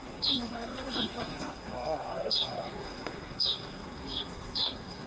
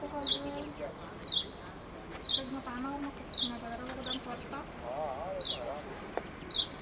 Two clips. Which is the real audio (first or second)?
second